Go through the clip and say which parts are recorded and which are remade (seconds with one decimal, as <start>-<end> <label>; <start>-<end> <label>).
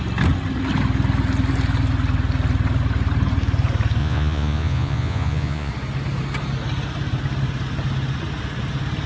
0.0-4.0 recorded; 4.0-5.7 remade; 5.7-9.1 recorded